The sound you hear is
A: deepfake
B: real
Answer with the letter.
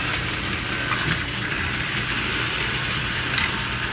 B